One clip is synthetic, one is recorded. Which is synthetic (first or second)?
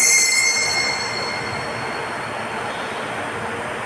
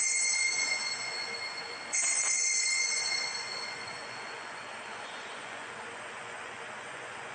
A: second